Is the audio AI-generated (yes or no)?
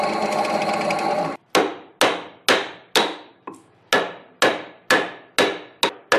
no